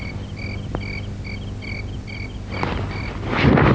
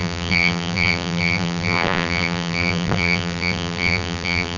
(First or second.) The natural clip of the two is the first